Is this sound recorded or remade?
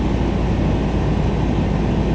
recorded